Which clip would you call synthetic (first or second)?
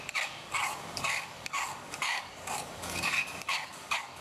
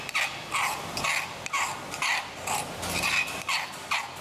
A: first